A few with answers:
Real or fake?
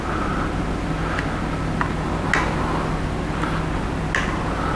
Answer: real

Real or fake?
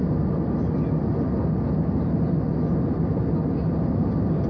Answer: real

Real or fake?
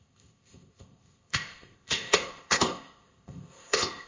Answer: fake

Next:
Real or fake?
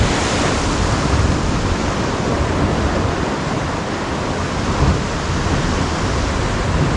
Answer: real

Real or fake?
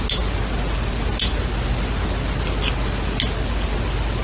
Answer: real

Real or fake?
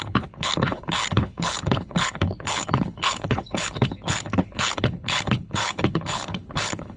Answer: fake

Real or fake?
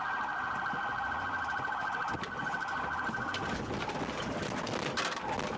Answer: real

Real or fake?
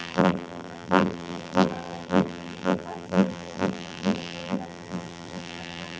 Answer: fake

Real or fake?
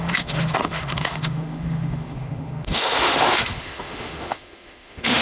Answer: fake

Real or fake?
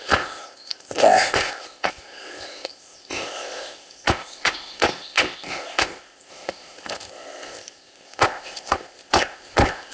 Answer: fake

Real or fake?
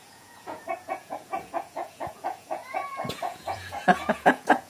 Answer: fake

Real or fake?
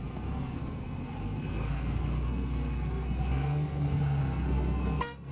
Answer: fake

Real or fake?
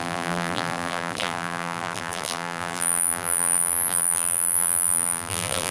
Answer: fake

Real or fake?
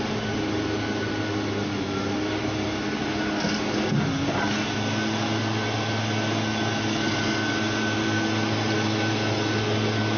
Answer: real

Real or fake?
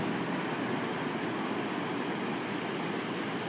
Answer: real